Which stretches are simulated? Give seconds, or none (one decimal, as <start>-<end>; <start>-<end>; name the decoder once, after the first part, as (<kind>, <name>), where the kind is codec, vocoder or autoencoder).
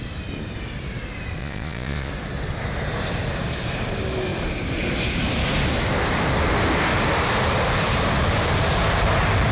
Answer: 1.4-2.1 (vocoder, Vocos)